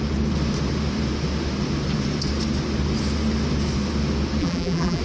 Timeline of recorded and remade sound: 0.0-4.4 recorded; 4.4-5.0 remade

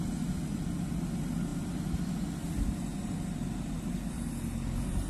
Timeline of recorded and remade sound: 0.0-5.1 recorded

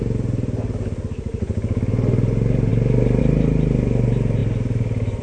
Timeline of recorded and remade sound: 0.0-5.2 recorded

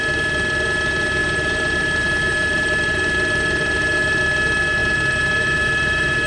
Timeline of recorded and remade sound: 0.0-1.2 recorded; 1.2-4.2 remade; 4.2-4.8 recorded; 4.8-6.3 remade

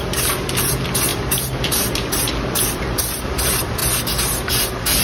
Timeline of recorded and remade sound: 0.0-3.8 remade; 3.8-4.5 recorded; 4.5-5.0 remade

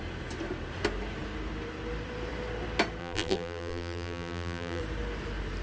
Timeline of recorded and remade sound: 0.0-3.0 recorded; 3.0-4.8 remade; 4.8-5.6 recorded

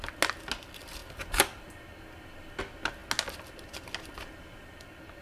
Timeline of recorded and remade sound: 0.0-5.2 recorded

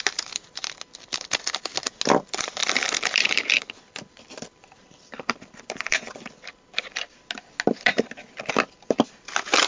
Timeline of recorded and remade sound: 0.0-2.6 recorded; 2.6-7.2 remade; 7.2-9.7 recorded